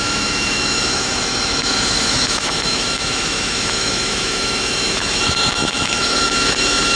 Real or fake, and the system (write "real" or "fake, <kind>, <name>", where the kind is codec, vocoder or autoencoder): fake, autoencoder, DAC-VAE